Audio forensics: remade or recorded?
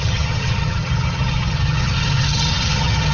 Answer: remade